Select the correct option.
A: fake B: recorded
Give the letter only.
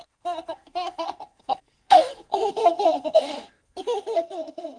A